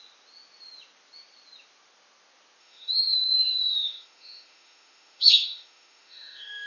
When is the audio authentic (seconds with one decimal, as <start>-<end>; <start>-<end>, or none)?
0.0-2.6